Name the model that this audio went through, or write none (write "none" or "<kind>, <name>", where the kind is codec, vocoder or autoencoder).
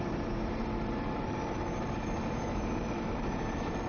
vocoder, BigVGAN v2